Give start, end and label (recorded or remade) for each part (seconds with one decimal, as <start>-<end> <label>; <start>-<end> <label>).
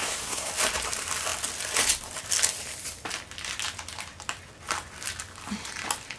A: 0.0-0.5 remade; 0.5-6.2 recorded